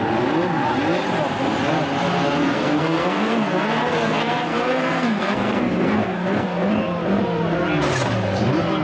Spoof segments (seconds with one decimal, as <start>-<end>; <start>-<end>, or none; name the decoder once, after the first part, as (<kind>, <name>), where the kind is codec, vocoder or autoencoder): 2.4-6.7 (codec, SNAC)